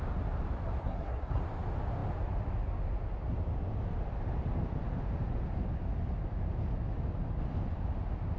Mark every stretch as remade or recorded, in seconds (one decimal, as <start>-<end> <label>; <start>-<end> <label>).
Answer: 0.0-0.8 recorded; 0.8-1.4 remade; 1.4-8.4 recorded